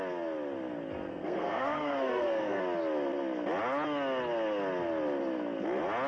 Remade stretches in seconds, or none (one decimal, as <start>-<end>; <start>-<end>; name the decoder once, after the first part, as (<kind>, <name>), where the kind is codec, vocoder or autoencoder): 1.1-2.6 (codec, SNAC)